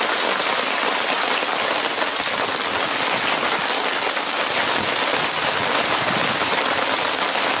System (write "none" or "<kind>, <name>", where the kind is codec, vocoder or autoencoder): none